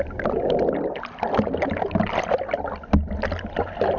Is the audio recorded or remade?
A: recorded